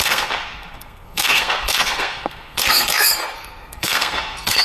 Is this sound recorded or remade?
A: remade